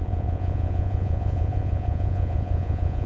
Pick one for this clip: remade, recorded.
remade